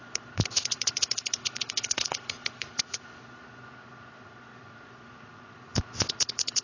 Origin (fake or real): fake